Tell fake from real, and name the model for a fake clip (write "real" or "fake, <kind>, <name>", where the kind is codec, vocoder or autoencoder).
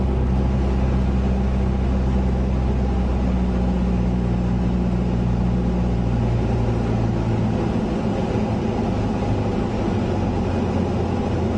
real